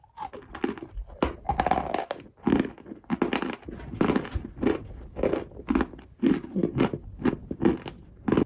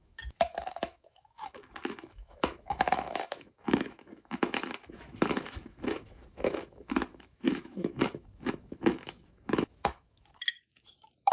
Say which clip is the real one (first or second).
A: first